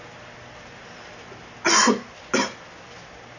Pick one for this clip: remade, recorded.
recorded